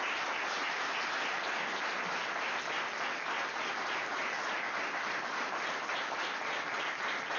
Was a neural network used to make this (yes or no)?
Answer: no